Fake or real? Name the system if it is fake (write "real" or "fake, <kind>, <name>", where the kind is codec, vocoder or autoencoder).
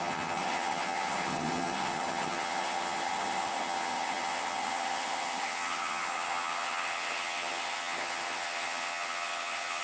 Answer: fake, vocoder, HiFi-GAN